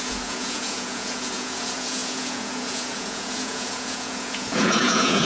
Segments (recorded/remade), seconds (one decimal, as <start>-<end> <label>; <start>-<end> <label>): 0.0-5.3 remade